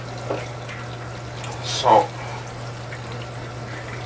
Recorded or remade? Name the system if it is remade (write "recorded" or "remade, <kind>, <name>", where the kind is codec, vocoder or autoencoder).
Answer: recorded